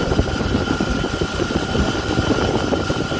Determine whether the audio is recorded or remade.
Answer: recorded